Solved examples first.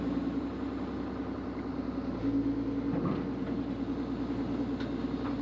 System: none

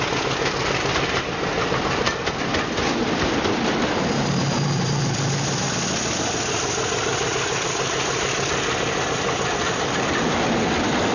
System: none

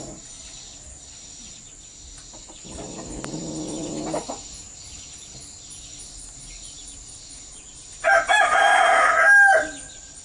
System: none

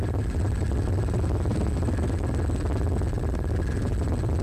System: none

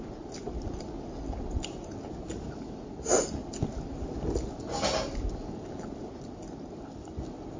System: none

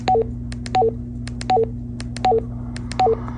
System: none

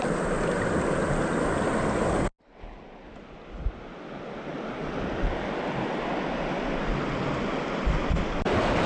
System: none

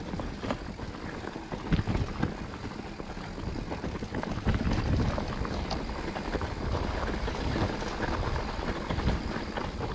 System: none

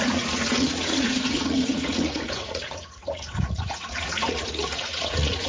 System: vocoder, Vocos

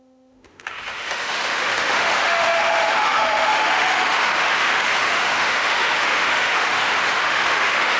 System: autoencoder, DAC-VAE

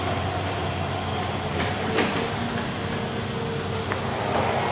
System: none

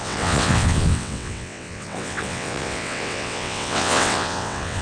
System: vocoder, WaveNeXt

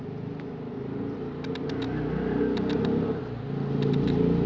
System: none